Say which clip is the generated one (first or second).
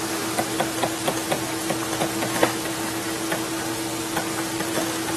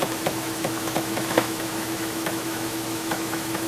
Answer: second